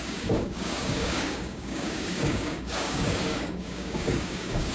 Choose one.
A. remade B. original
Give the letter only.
A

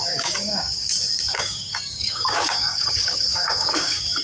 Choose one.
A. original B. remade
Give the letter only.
B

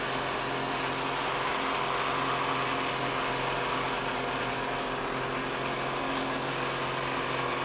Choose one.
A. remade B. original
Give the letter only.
B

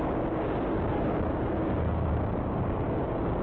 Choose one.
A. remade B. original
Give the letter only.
A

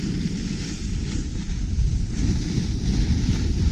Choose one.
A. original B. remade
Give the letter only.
A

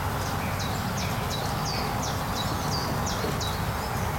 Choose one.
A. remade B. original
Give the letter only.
B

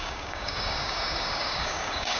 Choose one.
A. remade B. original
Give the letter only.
A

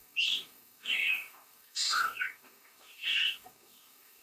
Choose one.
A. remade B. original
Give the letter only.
A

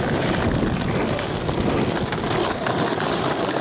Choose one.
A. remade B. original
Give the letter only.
B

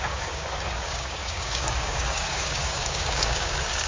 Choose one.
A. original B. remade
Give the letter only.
B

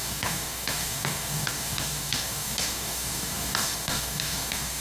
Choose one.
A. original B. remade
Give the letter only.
B